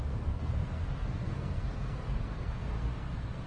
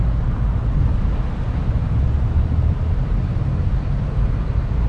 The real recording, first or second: second